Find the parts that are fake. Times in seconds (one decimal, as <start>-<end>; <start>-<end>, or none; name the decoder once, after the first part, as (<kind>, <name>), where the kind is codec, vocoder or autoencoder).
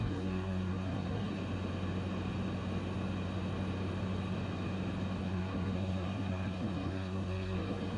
0.0-1.4 (codec, SNAC); 5.2-8.0